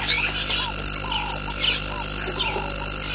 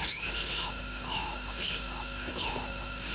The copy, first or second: second